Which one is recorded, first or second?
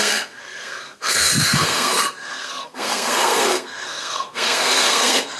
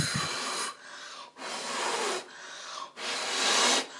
second